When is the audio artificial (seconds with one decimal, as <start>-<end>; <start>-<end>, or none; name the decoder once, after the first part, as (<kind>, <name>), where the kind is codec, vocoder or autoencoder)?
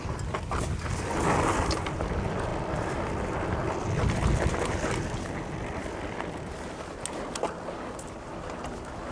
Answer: none